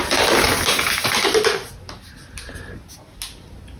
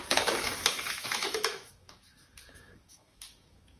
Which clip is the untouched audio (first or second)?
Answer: first